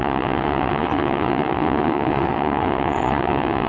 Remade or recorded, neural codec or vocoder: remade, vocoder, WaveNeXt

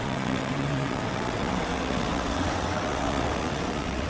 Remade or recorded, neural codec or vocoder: remade, vocoder, WaveNeXt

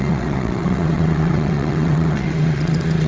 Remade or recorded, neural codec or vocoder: remade, vocoder, WaveNeXt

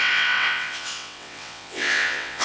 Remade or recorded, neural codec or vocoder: remade, vocoder, WaveNeXt